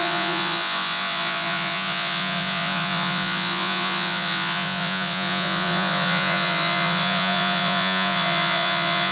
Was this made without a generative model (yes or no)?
no